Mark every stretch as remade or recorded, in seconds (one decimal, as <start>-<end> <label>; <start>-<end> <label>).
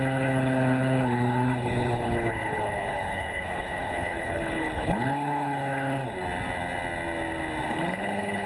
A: 0.0-6.0 remade; 6.0-7.7 recorded; 7.7-8.5 remade